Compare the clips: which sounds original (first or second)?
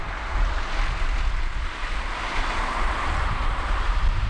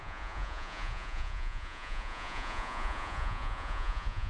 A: first